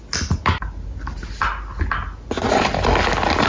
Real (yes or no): yes